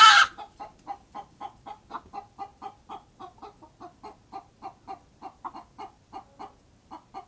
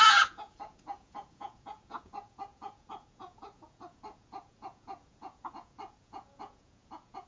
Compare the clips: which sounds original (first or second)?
first